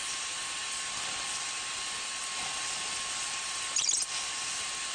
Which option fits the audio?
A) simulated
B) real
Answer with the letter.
B